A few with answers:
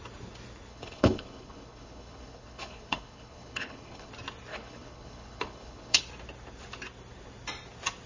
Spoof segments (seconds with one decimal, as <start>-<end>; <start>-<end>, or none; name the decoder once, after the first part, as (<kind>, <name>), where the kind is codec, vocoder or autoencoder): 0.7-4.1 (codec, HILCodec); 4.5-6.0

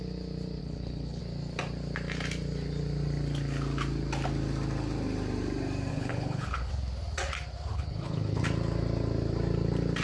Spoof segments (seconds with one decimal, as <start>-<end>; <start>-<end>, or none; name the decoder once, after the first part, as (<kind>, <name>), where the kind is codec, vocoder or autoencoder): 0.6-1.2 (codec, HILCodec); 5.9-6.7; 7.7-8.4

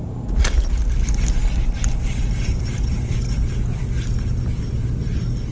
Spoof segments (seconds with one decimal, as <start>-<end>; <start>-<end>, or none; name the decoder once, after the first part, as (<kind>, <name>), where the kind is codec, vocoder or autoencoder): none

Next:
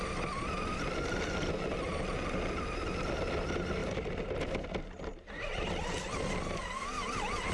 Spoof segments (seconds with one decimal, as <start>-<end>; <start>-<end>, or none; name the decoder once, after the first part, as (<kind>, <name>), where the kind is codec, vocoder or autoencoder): none

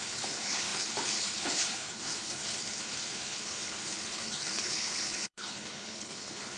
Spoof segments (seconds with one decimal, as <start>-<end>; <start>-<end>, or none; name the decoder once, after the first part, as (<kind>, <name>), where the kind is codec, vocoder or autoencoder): 0.0-6.6 (codec, HILCodec)

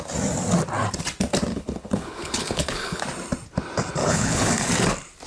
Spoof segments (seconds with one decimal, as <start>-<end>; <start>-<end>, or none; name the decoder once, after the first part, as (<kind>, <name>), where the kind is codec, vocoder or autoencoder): 1.5-3.0 (codec, HILCodec); 4.0-4.7